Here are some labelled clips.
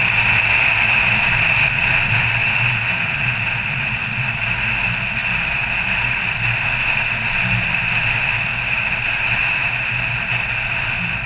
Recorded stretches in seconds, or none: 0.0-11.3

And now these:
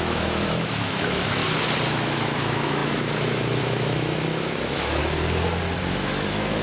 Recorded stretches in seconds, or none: 1.4-1.9; 5.0-5.8